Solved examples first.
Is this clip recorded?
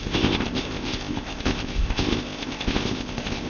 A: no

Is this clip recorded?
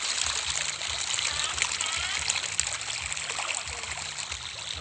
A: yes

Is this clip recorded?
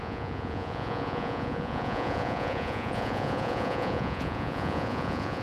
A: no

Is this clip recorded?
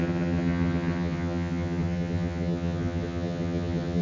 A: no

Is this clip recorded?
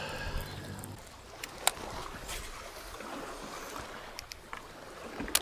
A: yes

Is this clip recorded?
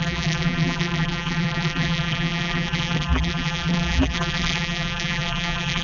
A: no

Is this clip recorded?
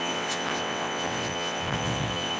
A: no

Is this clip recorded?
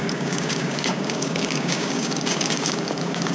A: no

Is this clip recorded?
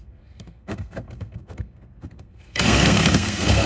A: no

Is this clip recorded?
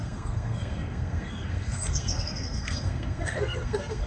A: no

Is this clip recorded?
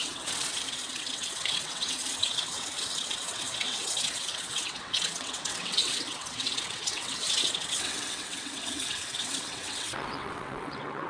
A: no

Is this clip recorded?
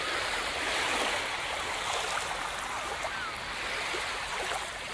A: yes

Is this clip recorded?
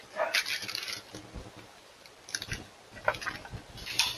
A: yes